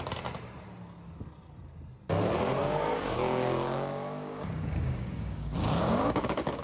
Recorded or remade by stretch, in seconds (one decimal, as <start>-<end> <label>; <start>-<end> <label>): 0.0-2.6 recorded; 2.6-6.6 remade